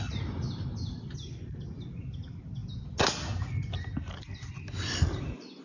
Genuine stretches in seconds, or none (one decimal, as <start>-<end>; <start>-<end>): 0.0-5.6